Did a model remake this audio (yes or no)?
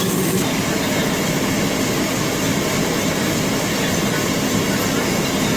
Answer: no